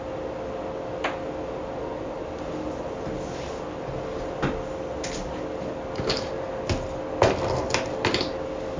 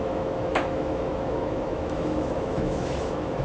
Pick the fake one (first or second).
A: second